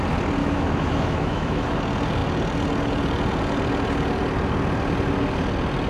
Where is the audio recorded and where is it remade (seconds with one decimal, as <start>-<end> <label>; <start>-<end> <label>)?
0.0-0.4 recorded; 0.4-1.8 remade; 1.8-5.9 recorded